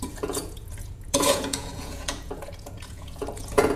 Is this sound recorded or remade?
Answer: remade